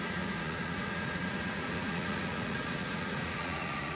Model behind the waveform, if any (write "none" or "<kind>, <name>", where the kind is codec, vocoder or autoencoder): vocoder, Vocos